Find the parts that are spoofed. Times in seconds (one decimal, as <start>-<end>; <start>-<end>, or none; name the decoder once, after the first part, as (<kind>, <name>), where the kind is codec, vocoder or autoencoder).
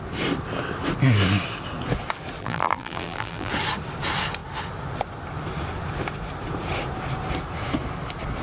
2.4-3.5 (vocoder, BigVGAN v2)